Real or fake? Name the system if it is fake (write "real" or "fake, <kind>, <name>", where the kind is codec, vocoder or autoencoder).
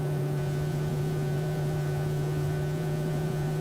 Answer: fake, vocoder, Vocos